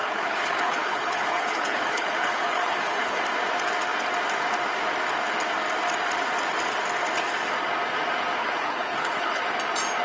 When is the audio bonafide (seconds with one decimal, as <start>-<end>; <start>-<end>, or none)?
3.2-8.4; 9.4-10.0